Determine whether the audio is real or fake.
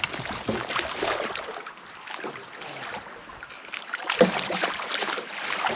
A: real